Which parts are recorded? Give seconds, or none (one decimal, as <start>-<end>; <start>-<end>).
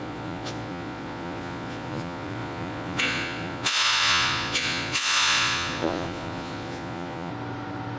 7.3-8.0